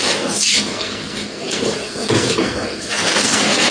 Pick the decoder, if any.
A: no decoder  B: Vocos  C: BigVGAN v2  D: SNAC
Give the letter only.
D